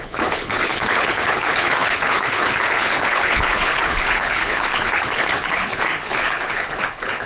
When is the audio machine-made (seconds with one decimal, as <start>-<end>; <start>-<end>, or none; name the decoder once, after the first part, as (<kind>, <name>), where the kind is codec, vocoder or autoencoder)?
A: 0.0-7.3 (codec, HILCodec)